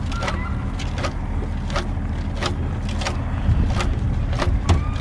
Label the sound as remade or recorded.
recorded